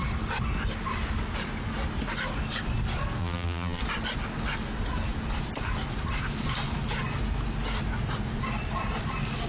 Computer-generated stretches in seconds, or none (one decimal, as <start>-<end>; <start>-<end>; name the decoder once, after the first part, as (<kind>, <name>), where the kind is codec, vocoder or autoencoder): 3.2-3.8 (vocoder, BigVGAN v2)